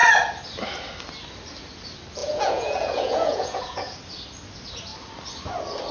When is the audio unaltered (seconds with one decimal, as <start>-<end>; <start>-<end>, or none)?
0.0-2.2; 4.0-5.9